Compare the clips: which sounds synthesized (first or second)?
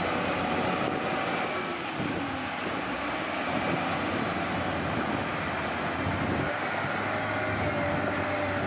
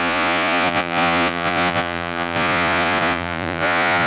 second